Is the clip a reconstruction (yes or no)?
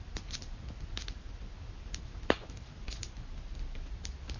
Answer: no